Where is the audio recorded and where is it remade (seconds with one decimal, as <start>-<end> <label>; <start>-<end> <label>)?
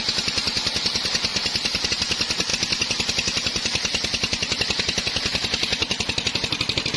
0.0-1.3 recorded; 1.3-1.9 remade; 1.9-7.0 recorded